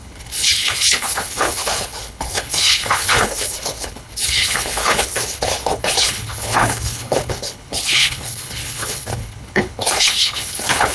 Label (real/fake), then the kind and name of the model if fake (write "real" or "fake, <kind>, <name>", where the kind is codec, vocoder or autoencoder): fake, codec, HILCodec